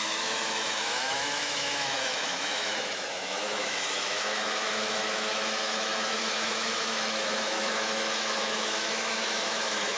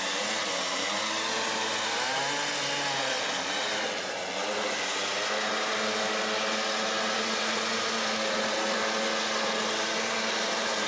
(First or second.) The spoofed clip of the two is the first